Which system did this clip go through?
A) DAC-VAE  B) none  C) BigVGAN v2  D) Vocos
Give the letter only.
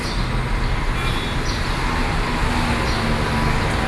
B